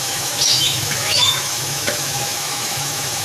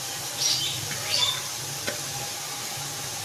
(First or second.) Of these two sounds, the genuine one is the second